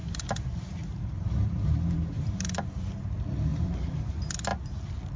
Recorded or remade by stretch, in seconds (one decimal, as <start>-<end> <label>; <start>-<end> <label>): 0.0-3.1 remade; 3.1-3.5 recorded; 3.5-4.1 remade; 4.1-5.2 recorded